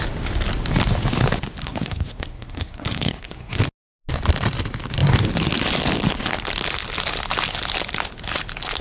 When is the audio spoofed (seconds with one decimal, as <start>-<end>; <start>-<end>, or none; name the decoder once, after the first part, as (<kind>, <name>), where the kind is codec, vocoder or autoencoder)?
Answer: 1.6-3.6 (codec, SNAC)